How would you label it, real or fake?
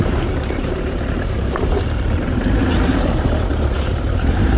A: fake